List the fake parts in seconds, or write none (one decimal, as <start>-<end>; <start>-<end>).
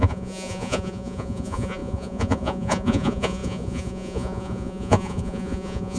0.0-6.0